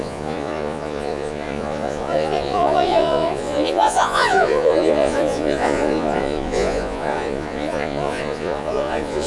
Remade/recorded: remade